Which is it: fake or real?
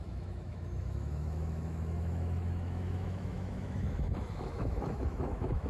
fake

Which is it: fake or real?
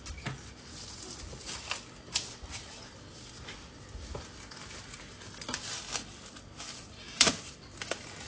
real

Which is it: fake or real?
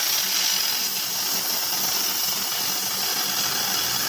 real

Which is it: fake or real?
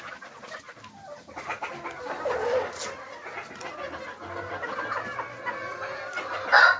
real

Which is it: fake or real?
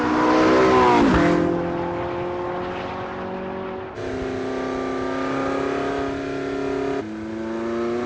real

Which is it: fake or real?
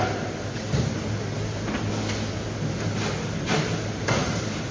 real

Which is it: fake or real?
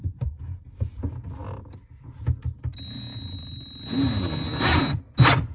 real